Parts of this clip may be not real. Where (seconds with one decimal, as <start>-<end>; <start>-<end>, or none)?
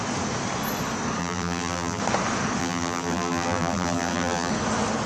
1.2-2.0; 2.6-4.5